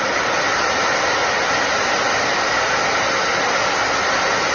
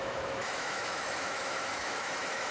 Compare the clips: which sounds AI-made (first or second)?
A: second